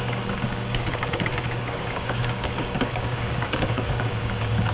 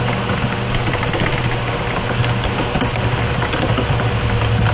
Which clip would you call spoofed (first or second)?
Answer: first